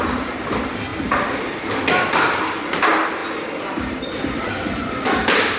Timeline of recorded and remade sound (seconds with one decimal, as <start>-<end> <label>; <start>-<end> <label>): 0.0-5.6 recorded